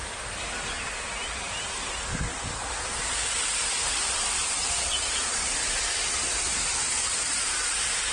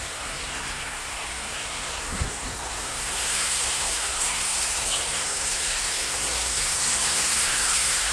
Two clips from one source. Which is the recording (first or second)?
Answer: first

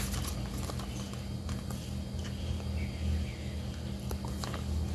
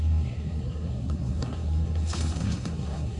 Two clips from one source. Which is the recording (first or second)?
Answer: first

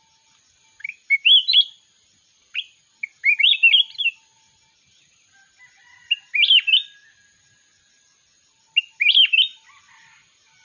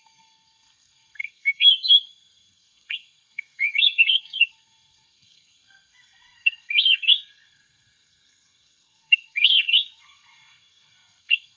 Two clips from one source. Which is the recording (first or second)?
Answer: first